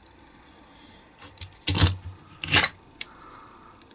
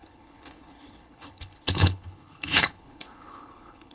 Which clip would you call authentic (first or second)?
first